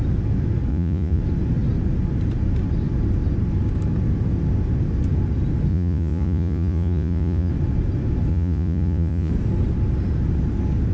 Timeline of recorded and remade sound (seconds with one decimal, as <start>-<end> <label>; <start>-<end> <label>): 0.0-0.7 recorded; 0.7-1.2 remade; 1.2-5.7 recorded; 5.7-7.5 remade; 7.5-8.3 recorded; 8.3-9.3 remade; 9.3-10.9 recorded